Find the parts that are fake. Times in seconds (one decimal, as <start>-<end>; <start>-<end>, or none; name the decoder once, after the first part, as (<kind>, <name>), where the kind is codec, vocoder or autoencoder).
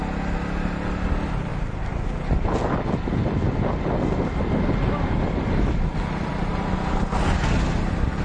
none